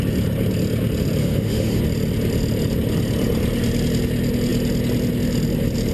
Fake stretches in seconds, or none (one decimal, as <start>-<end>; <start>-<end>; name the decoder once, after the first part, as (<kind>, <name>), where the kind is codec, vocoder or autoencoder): 1.2-1.8 (autoencoder, DAC-VAE)